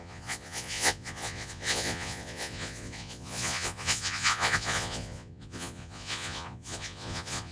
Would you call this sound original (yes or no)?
no